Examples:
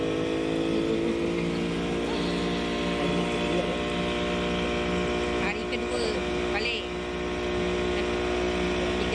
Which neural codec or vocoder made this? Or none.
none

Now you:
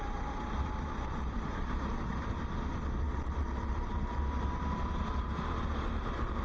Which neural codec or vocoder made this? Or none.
none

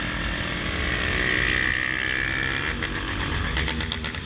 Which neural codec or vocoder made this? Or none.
none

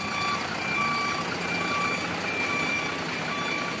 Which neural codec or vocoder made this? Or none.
none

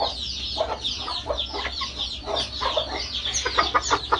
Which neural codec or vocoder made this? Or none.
none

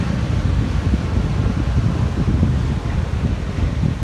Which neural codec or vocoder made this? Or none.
none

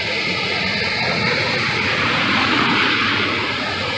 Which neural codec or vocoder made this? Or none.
vocoder, Vocos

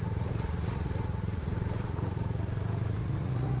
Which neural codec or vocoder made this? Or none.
vocoder, Vocos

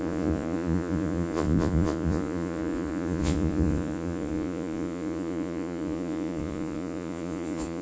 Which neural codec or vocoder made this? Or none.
vocoder, Vocos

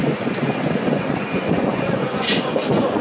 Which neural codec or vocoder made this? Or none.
vocoder, Vocos